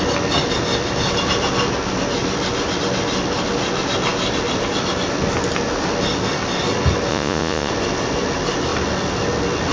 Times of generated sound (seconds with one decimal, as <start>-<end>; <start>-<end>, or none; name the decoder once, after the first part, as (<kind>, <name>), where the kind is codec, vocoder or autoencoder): 7.1-7.7 (vocoder, Vocos)